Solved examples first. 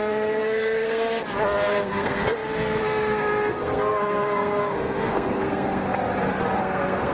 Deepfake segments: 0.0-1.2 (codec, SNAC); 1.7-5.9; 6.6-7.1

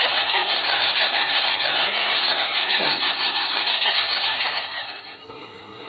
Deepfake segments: 0.0-5.9 (codec, SNAC)